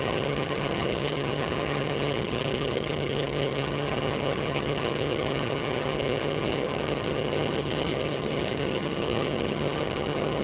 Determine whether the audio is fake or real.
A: fake